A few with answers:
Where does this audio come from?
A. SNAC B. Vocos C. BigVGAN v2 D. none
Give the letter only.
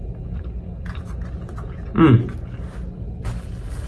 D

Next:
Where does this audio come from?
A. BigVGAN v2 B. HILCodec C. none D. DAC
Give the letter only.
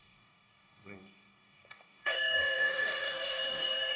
D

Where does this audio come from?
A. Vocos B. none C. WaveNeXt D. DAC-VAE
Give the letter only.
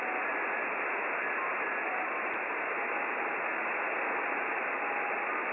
B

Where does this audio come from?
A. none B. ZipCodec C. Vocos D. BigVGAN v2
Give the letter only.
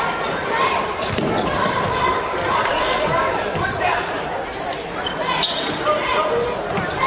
D